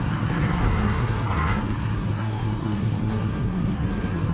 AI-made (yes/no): yes